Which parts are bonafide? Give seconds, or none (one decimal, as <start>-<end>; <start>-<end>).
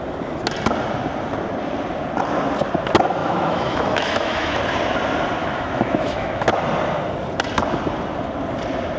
0.0-3.2; 4.6-5.4; 6.6-9.0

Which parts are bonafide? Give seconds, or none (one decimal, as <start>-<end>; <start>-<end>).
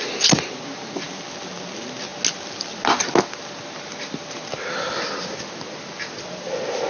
0.0-6.9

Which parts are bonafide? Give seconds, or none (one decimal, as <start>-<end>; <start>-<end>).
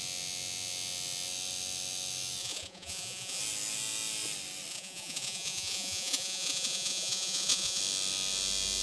0.0-2.4; 3.4-4.7; 7.8-8.8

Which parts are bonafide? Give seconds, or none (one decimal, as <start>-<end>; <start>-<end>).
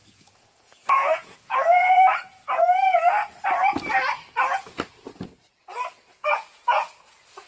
3.2-5.9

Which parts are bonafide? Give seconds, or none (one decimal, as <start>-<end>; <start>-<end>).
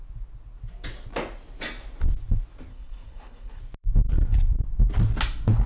0.0-2.7; 3.6-5.7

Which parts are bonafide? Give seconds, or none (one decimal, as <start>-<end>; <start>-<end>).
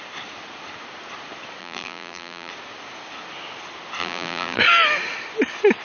0.0-1.6; 2.5-4.0; 4.6-5.8